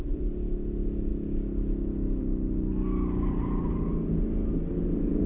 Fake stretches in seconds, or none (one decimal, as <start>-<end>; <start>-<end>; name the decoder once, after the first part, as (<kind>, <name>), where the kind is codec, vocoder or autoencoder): none